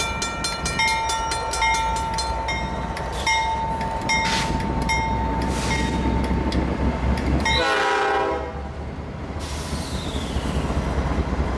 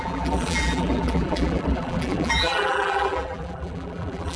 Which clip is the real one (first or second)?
first